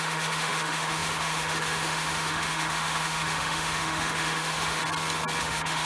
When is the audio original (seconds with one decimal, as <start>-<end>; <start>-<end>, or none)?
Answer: 4.8-5.4